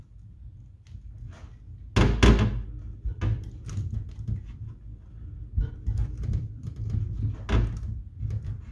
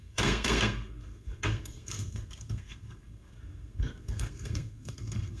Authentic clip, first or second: first